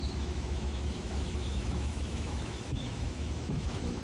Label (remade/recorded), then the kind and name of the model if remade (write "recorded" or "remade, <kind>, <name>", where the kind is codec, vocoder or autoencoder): remade, autoencoder, DAC-VAE